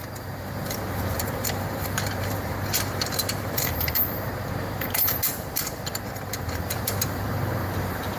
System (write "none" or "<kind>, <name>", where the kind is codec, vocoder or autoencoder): vocoder, BigVGAN v2